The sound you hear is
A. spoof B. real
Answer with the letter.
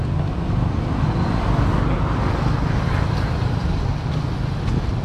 B